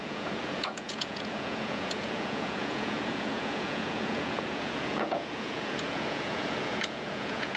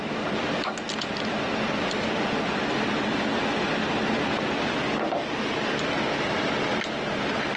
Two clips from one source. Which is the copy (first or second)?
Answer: first